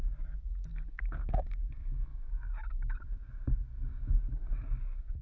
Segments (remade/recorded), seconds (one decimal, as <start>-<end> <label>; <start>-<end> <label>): 0.0-0.7 recorded; 0.7-3.3 remade; 3.3-3.7 recorded; 3.7-5.2 remade